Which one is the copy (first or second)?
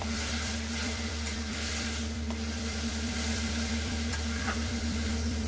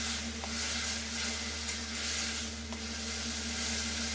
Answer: first